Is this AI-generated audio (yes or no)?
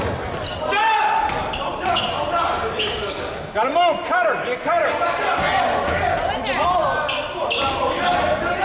no